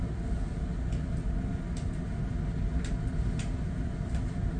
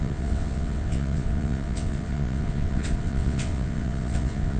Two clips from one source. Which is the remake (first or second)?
second